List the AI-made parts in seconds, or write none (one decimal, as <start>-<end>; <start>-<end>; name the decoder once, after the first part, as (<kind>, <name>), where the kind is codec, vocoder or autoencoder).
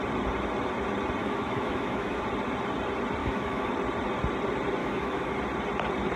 1.2-2.2 (autoencoder, DAC-VAE); 3.2-3.7; 4.8-5.3